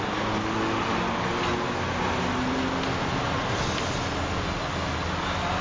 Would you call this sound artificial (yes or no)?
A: no